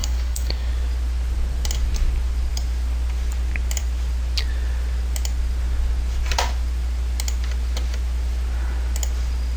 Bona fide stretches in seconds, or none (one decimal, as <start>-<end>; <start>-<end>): 0.7-9.6